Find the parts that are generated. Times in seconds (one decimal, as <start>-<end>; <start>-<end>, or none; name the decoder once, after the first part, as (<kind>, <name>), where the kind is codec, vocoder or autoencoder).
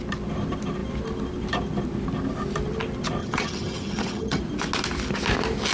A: 3.2-4.4 (vocoder, HiFi-GAN)